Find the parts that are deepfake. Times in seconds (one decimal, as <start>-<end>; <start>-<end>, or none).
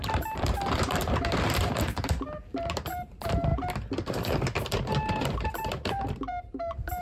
0.0-3.5; 4.9-7.0